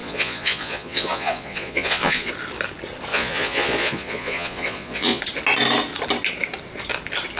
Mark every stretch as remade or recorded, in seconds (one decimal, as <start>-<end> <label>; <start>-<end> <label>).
0.0-2.3 remade; 2.3-3.1 recorded; 3.1-5.2 remade; 5.2-7.4 recorded